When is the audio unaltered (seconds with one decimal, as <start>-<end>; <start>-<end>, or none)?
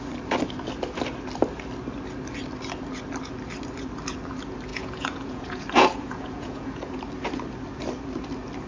0.0-4.7; 6.9-8.7